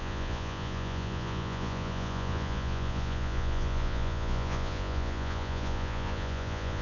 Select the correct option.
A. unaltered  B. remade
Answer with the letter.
B